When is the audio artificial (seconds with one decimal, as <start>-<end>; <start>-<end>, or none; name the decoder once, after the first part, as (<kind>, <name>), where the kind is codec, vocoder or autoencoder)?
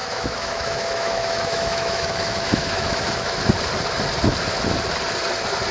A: 0.0-3.4 (autoencoder, DAC-VAE)